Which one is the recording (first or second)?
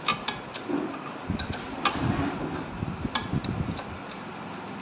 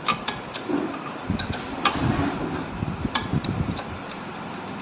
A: first